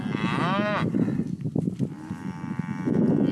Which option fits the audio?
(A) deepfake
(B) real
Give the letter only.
B